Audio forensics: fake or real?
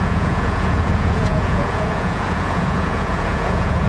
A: fake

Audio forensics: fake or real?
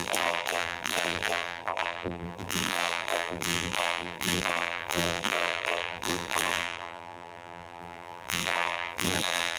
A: fake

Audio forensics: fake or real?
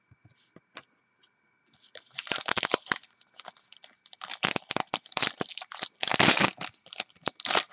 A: real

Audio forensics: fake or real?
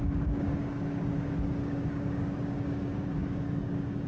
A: fake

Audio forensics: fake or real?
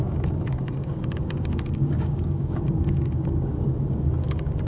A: fake